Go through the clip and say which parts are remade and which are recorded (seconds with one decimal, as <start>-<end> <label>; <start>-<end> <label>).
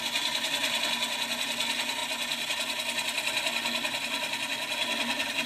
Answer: 0.0-5.5 recorded